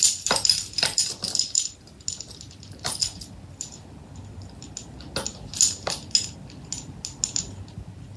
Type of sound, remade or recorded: recorded